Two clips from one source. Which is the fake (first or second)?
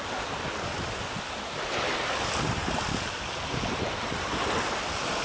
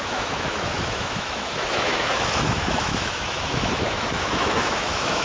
second